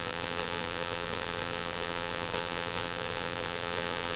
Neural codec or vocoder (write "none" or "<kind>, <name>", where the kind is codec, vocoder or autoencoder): vocoder, BigVGAN v2